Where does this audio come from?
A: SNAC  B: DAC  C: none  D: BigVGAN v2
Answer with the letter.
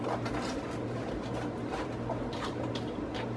C